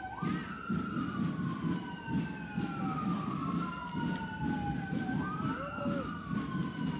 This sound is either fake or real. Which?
real